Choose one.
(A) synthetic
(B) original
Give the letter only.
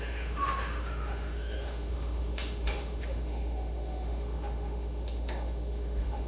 A